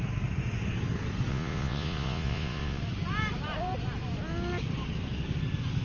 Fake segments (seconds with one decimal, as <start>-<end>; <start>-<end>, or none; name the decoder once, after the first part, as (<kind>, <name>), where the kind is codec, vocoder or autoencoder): 1.3-2.8 (vocoder, Vocos)